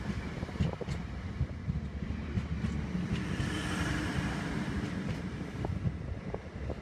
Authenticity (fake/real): real